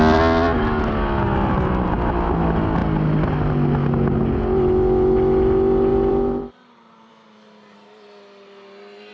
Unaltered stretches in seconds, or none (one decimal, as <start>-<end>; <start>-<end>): 0.0-5.9; 7.1-9.1